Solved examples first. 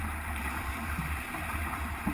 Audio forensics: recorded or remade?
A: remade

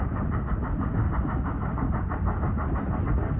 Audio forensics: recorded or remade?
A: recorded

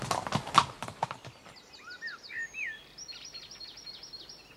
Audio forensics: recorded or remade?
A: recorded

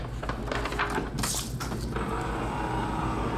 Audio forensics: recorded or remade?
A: recorded